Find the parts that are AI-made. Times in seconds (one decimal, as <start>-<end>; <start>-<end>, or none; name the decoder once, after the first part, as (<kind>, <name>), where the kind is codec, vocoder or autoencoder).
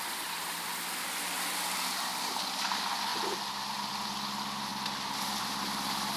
0.0-0.7 (vocoder, BigVGAN v2); 1.6-3.1; 3.9-4.7; 5.4-6.2